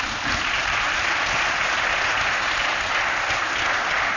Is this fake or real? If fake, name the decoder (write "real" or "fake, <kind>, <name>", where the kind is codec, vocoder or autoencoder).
real